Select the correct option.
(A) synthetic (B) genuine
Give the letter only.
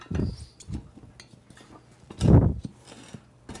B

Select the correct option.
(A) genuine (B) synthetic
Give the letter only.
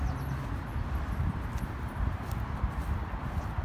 A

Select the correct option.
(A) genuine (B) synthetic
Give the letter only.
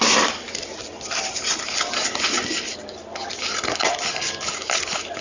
A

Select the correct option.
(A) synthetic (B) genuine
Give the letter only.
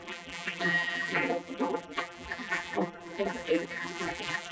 A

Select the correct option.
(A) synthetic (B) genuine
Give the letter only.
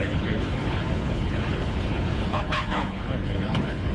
A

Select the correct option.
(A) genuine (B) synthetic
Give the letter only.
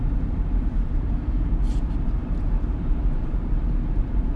B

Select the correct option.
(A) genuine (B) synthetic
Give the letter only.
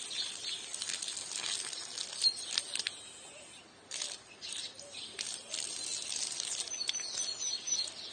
A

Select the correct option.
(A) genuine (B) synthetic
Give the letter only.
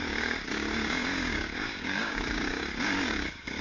B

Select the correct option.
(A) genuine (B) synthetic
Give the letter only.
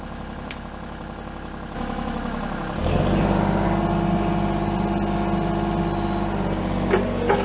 A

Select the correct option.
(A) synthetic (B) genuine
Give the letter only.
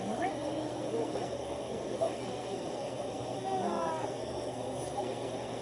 A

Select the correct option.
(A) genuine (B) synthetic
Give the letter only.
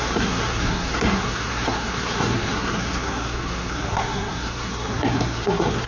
B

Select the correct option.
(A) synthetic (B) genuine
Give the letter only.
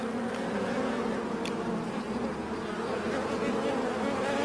B